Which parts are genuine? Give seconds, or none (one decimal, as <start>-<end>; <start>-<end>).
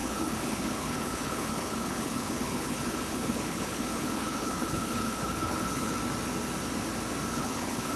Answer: 6.0-7.3